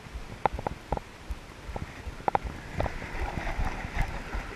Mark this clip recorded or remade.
recorded